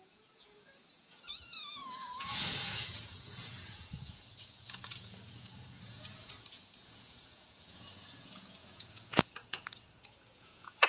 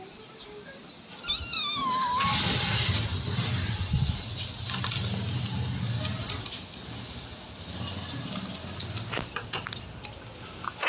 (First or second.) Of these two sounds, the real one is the second